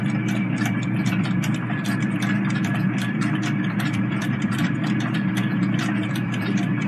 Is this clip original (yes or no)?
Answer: no